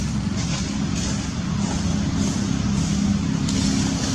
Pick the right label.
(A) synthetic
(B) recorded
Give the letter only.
B